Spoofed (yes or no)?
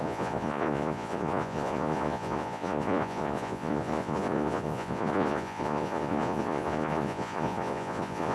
yes